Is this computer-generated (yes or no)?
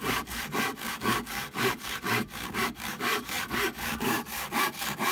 yes